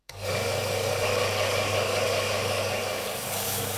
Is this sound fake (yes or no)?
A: yes